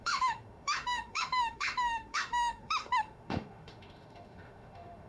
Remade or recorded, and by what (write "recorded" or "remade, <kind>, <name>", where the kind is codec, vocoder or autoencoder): remade, autoencoder, DAC-VAE